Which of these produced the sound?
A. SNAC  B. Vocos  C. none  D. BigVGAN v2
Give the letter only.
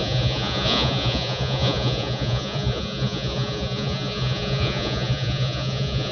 B